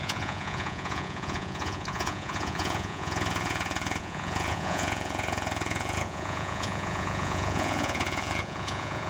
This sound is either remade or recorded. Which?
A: remade